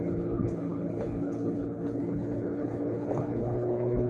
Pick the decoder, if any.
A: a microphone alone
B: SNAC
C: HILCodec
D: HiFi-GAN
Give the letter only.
C